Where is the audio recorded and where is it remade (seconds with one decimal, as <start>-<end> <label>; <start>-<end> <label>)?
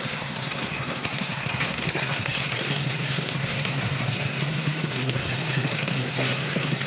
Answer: 0.0-6.9 remade